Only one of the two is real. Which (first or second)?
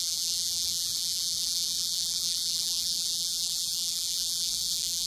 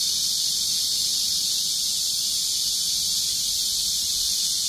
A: second